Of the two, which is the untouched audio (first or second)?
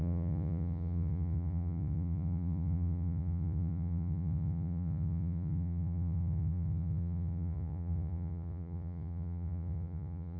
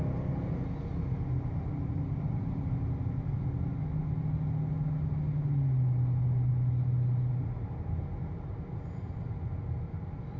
second